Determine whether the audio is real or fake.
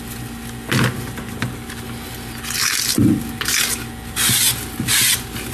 real